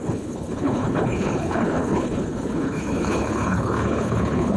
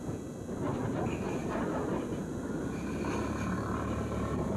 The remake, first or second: first